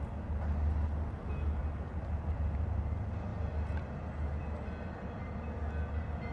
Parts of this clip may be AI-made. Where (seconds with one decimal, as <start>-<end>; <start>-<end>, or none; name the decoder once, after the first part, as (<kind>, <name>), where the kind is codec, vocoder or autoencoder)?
1.6-2.8 (vocoder, BigVGAN v2)

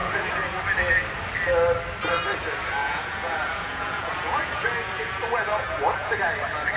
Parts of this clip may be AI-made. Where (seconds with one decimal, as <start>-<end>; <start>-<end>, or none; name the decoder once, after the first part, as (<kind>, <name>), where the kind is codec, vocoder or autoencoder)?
0.0-0.6 (vocoder, Vocos); 2.8-6.2

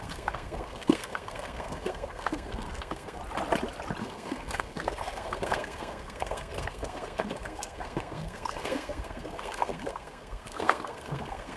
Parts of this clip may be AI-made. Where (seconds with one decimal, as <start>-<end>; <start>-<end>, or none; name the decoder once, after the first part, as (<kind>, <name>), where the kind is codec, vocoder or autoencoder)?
0.0-3.2 (codec, SNAC); 4.0-11.6

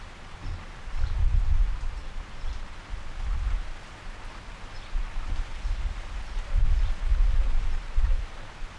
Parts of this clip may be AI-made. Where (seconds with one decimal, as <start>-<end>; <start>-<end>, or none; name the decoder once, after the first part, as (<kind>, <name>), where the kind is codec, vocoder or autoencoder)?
none